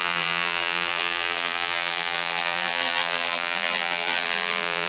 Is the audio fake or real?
fake